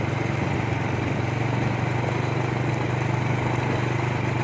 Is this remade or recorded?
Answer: recorded